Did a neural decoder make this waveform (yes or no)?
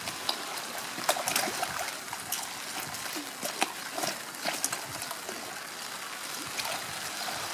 no